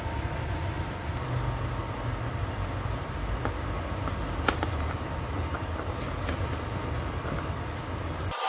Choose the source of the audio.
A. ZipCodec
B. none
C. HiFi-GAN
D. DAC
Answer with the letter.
B